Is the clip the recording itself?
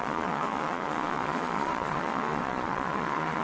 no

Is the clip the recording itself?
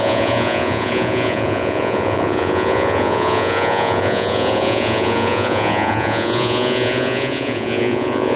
no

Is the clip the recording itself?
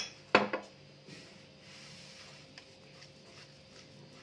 yes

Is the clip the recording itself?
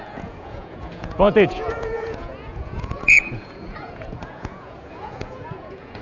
no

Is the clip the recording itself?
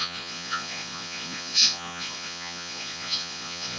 no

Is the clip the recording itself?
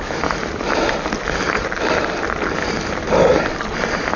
yes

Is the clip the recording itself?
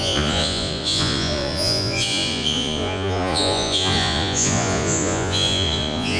no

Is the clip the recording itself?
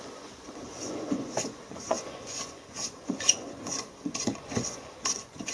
no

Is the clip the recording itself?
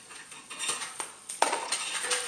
no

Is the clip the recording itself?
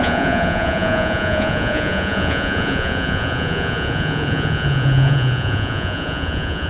no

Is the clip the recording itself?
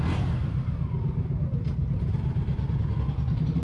yes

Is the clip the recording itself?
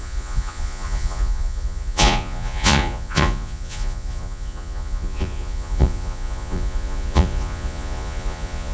no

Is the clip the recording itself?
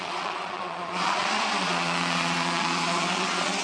no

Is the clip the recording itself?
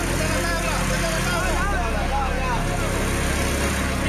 yes